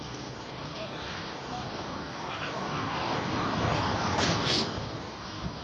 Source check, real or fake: fake